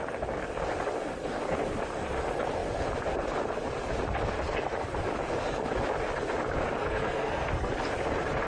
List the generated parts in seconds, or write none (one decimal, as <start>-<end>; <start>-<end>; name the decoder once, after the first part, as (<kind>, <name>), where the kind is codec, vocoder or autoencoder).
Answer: 6.8-7.7 (codec, SNAC)